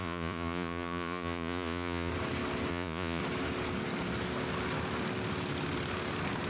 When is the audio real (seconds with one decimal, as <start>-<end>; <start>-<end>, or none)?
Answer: 2.1-2.7; 3.2-6.5